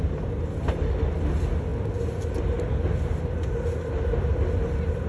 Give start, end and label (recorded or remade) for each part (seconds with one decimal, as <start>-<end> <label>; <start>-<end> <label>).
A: 0.0-5.1 recorded